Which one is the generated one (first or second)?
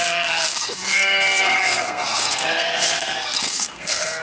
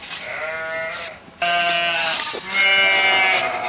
first